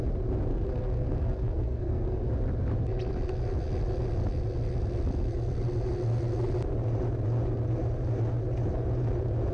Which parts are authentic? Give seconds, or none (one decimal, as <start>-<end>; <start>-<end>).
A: 0.0-0.5; 2.3-9.5